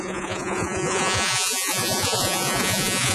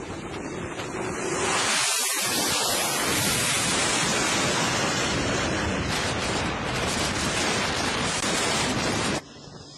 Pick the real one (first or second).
second